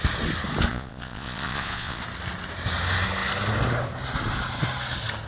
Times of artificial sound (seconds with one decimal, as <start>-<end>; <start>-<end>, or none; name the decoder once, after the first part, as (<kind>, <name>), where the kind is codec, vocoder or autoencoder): 0.7-2.0 (vocoder, Vocos)

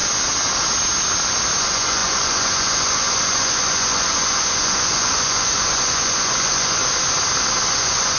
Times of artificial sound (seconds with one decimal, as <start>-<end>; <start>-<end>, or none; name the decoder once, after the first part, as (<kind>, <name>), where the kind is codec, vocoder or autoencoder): 1.6-6.8 (vocoder, Vocos); 7.7-8.2